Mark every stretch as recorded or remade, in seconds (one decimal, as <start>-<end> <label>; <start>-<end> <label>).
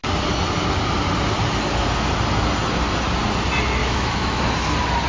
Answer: 0.0-3.8 recorded; 3.8-4.4 remade; 4.4-5.1 recorded